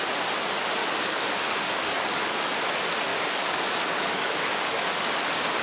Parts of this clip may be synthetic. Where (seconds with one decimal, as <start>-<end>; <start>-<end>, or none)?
0.8-2.4; 3.1-5.1